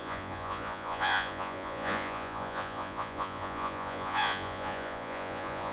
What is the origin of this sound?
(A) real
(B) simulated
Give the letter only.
B